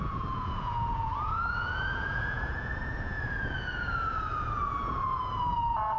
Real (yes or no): no